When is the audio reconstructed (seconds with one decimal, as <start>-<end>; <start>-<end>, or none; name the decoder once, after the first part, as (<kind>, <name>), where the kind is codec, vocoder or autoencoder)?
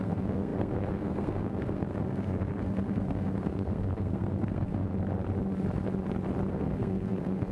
0.0-4.9 (codec, SNAC); 6.5-7.5